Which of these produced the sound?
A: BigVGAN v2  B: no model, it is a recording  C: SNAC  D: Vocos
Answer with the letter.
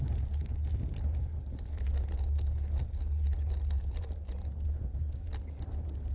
B